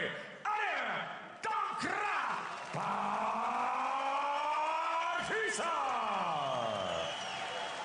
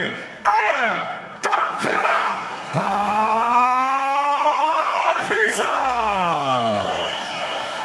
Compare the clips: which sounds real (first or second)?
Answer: first